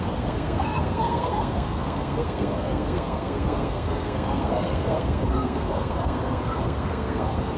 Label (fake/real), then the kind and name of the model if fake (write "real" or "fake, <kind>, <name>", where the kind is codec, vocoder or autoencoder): fake, codec, SNAC